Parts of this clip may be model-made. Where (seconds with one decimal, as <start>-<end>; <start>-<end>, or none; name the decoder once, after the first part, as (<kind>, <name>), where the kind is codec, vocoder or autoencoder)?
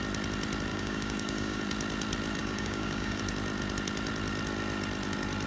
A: 0.7-1.6 (codec, DAC); 2.4-3.2